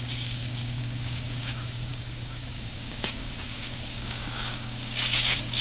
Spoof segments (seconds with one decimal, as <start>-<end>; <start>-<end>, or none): 0.0-5.6